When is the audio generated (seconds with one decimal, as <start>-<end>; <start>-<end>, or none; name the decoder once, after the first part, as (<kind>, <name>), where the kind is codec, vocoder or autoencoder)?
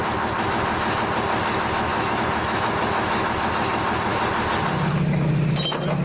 1.9-3.5 (autoencoder, DAC-VAE)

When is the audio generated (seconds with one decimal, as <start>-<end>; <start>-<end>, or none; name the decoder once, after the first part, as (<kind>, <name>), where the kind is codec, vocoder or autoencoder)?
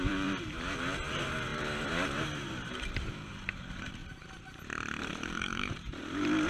0.0-4.0 (vocoder, BigVGAN v2); 5.1-6.5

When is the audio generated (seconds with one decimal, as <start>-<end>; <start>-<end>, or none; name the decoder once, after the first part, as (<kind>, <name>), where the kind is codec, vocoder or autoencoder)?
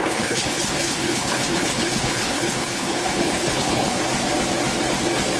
0.0-4.0 (codec, HILCodec)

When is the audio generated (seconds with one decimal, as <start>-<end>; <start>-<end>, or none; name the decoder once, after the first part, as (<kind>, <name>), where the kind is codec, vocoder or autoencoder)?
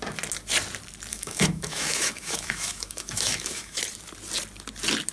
1.1-3.8 (autoencoder, DAC-VAE)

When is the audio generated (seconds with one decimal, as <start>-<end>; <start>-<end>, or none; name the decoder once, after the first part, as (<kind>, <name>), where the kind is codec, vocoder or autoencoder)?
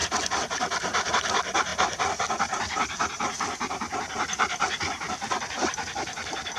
none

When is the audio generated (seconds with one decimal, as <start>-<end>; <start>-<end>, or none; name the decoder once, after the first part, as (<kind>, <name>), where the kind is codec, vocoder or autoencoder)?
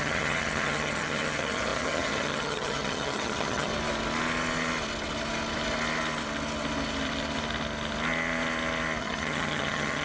0.0-3.7 (vocoder, HiFi-GAN); 9.0-10.0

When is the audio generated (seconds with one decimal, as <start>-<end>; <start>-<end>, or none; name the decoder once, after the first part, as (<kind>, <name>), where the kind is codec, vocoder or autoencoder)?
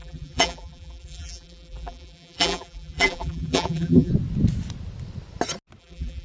0.0-4.1 (vocoder, BigVGAN v2); 5.8-6.2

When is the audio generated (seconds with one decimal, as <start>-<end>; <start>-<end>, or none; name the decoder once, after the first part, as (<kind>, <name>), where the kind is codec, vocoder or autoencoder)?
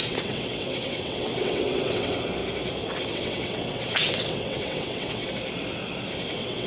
0.0-2.4 (vocoder, WaveNeXt); 3.1-5.2; 6.3-6.7